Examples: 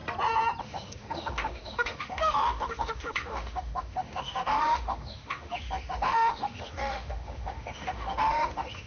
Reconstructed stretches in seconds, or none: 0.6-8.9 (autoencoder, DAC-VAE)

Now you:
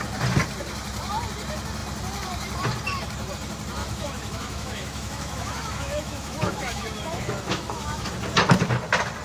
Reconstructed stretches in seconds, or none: 3.8-8.1 (autoencoder, DAC-VAE)